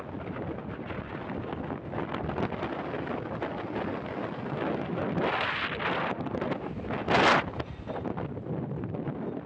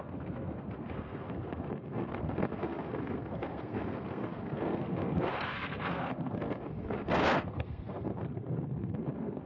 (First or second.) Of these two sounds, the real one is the first